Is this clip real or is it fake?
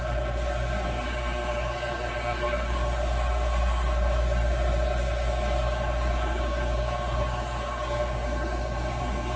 fake